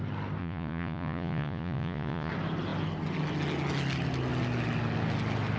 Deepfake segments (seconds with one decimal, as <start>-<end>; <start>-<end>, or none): 0.4-2.3